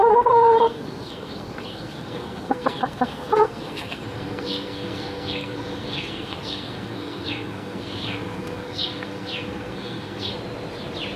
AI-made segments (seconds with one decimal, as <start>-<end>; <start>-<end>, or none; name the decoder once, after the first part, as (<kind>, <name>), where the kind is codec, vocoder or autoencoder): 0.0-10.3 (codec, SNAC)